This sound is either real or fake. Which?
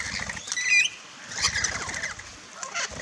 real